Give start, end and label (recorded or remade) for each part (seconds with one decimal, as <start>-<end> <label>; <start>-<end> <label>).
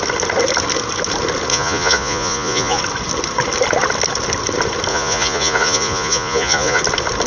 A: 0.0-1.5 recorded; 1.5-2.8 remade; 2.8-4.9 recorded; 4.9-6.8 remade; 6.8-7.3 recorded